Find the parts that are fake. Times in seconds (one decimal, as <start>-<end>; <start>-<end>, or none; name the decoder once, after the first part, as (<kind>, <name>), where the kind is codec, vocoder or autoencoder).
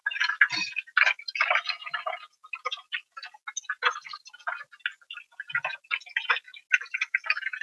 none